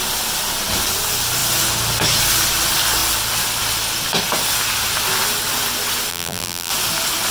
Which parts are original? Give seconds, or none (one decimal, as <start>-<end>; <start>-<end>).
0.0-6.1; 6.7-7.3